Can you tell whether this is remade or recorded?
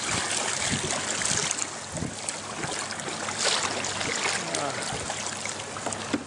recorded